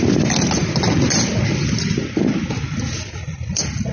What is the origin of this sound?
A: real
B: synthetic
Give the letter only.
A